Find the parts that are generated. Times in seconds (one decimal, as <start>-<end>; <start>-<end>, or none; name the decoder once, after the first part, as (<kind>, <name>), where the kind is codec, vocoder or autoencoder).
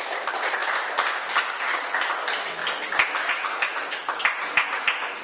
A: none